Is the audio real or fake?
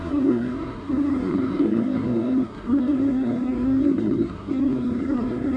fake